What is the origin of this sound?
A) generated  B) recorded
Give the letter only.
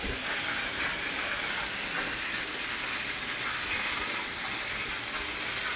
B